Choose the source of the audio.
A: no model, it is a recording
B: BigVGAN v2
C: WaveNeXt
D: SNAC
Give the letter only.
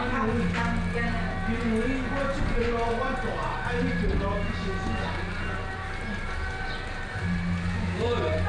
A